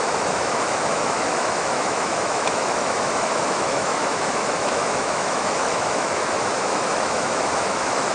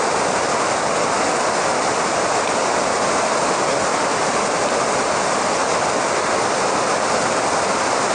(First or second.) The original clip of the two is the second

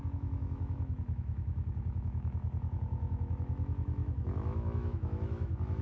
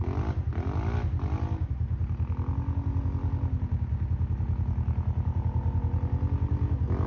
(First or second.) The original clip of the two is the second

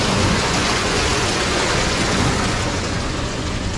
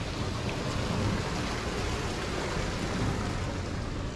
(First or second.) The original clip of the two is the second